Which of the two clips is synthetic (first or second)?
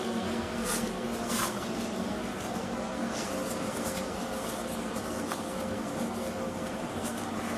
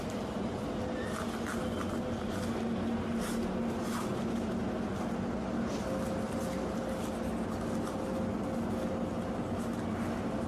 first